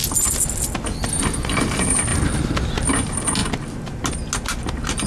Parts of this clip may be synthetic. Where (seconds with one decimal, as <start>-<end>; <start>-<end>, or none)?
none